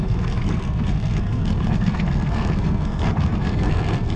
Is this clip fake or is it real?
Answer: fake